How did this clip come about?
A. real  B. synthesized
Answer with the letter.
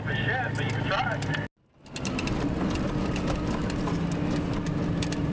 A